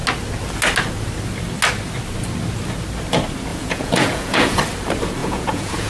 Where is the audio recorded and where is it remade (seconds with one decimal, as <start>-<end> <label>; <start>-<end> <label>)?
0.0-3.5 recorded; 3.5-4.6 remade; 4.6-5.2 recorded; 5.2-5.9 remade